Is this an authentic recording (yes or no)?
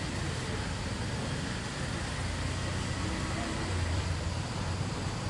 yes